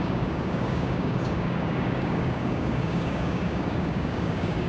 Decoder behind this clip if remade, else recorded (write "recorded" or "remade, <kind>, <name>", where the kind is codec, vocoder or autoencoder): remade, codec, DAC